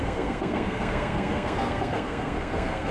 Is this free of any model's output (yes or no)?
no